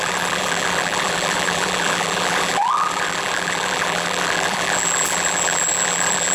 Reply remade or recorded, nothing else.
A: remade